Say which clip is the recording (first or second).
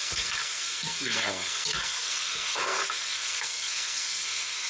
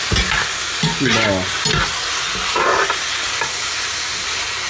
second